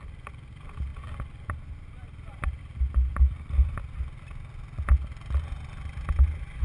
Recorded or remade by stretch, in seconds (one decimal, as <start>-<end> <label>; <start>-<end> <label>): 0.0-6.6 recorded